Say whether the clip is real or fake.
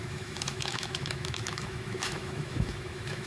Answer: fake